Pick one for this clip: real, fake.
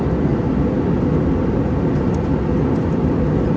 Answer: real